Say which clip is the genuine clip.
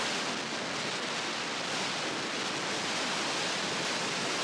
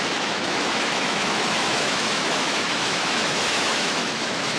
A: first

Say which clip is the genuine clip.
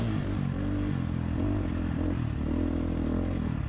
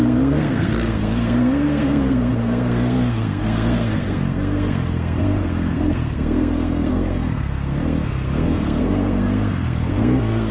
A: first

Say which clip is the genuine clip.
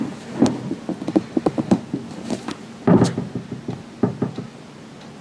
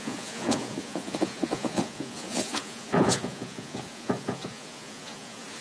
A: first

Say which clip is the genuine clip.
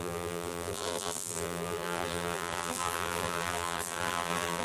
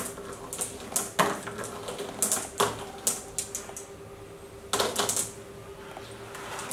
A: second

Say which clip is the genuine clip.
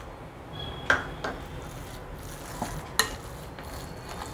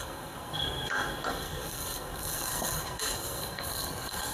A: first